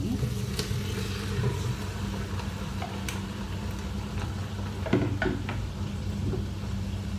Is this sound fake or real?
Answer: real